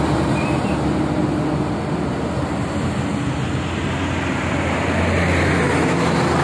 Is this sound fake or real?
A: real